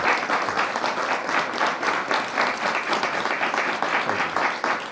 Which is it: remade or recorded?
recorded